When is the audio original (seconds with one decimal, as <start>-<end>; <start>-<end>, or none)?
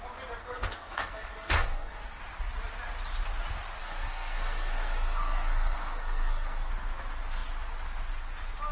0.0-0.4; 2.2-3.8; 6.7-8.7